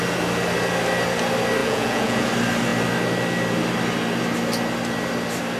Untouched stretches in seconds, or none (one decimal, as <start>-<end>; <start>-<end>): 0.0-1.6; 2.3-5.6